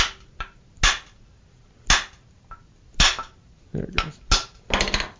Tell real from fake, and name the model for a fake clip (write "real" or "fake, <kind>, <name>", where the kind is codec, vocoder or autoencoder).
real